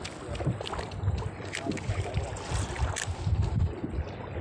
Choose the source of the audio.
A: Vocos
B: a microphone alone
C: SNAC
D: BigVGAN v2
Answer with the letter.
B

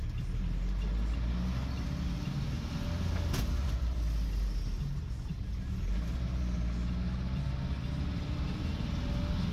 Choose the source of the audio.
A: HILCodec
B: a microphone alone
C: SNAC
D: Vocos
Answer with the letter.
B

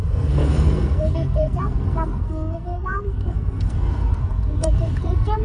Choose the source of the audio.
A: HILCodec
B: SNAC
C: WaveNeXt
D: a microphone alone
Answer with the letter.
B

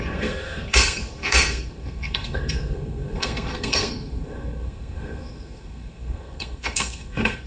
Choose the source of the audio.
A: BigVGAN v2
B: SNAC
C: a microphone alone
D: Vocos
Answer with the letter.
B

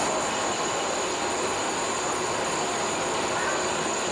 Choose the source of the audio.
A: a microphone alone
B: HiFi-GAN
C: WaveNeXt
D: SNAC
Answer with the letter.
A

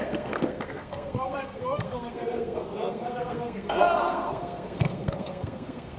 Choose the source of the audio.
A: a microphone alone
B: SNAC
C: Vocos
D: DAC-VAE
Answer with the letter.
B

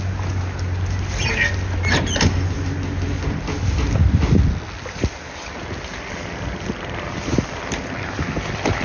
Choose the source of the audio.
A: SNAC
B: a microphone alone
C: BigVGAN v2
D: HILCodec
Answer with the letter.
B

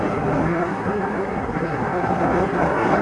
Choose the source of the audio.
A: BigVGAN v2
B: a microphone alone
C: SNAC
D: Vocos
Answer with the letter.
C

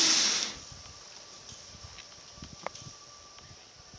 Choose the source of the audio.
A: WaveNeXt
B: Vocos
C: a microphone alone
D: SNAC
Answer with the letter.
C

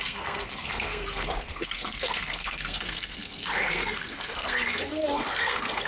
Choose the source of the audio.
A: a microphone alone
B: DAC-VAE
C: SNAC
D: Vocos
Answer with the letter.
C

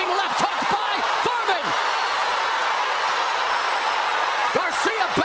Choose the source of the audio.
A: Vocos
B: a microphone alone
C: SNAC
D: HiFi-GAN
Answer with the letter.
B